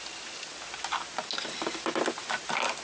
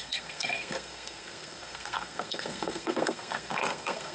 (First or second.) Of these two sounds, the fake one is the second